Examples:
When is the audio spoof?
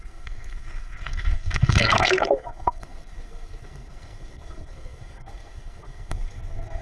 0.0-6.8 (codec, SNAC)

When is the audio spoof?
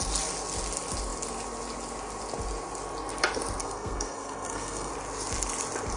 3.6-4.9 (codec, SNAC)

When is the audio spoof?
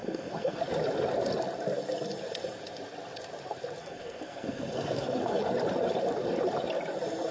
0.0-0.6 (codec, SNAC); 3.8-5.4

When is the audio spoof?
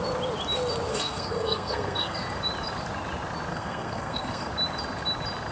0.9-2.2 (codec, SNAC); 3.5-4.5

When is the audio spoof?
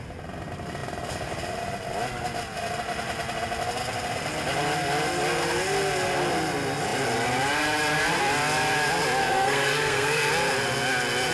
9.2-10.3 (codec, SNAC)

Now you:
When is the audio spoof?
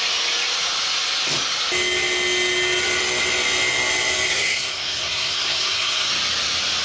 4.3-6.1 (codec, SNAC)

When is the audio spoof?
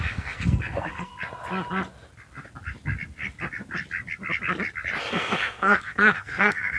0.0-1.1 (codec, SNAC); 5.0-6.8